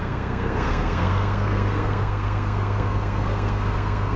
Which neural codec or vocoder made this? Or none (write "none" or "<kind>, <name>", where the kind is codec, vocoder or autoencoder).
codec, SNAC